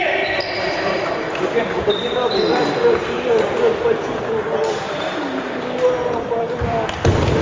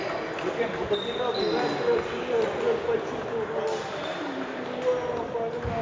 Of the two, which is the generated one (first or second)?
first